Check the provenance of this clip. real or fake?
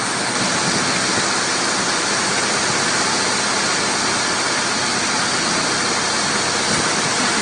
real